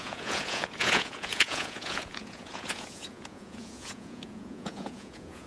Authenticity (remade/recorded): remade